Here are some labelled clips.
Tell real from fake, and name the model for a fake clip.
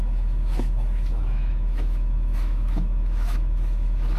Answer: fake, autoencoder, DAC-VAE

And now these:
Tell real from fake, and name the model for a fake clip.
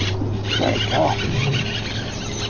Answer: real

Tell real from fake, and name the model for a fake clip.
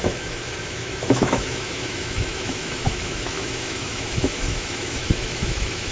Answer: fake, autoencoder, DAC-VAE